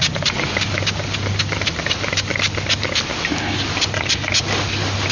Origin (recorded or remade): recorded